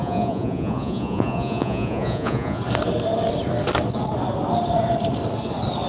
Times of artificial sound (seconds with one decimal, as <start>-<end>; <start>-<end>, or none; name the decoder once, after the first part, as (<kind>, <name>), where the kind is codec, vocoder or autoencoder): 0.0-2.6 (vocoder, Vocos)